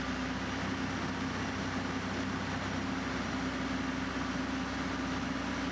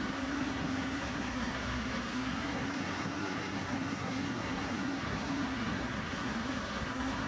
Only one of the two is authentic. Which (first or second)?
first